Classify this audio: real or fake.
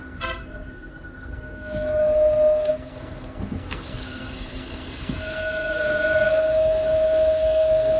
fake